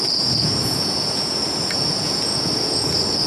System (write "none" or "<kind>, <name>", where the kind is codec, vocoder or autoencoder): vocoder, Vocos